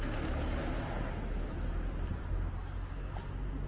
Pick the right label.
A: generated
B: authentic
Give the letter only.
B